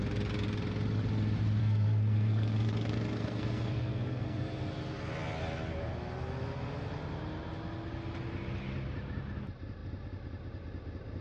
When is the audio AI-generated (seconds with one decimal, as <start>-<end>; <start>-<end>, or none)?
1.6-4.4